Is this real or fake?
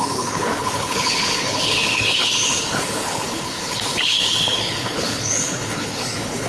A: fake